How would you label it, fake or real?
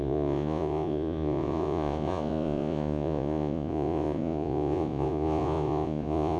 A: fake